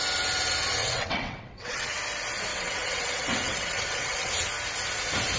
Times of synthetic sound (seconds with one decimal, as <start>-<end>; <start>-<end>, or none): 0.8-2.0; 2.5-4.3